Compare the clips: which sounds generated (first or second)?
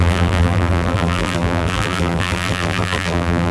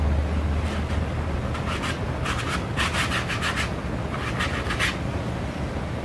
first